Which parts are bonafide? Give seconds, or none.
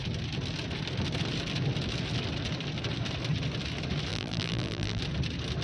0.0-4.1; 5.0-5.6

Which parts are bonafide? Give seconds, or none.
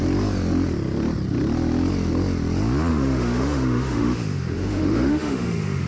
0.0-2.9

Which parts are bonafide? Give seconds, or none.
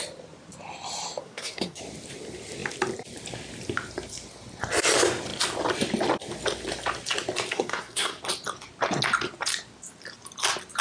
0.0-1.2; 1.8-7.5; 8.2-10.8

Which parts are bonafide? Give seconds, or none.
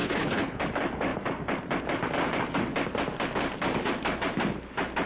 0.6-5.1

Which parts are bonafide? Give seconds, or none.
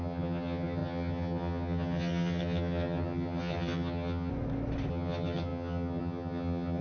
4.3-4.9